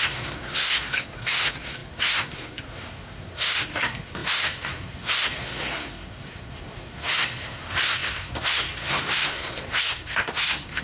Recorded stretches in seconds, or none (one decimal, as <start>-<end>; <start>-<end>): none